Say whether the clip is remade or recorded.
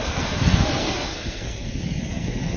remade